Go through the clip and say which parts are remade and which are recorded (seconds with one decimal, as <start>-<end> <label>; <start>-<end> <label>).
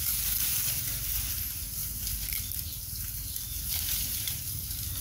0.0-5.0 recorded